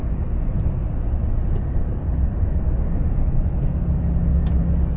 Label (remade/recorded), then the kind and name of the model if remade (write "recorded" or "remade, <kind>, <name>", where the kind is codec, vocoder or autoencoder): recorded